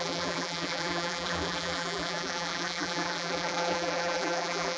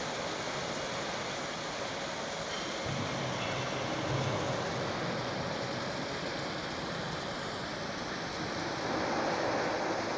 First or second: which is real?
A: second